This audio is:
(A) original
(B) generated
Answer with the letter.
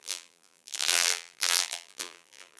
B